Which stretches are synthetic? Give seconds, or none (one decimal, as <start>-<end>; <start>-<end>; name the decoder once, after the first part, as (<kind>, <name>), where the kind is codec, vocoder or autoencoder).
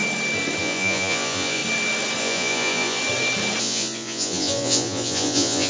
0.6-1.6 (vocoder, Vocos); 2.2-3.0; 3.6-5.7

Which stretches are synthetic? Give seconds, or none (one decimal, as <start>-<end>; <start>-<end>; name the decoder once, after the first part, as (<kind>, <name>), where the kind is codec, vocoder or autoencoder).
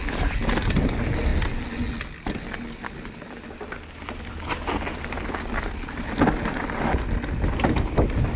none